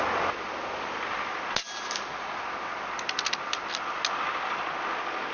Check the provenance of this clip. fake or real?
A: real